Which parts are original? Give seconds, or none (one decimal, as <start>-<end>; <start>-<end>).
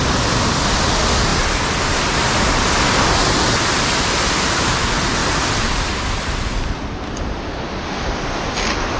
0.0-9.0